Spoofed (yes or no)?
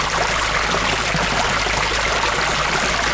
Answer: no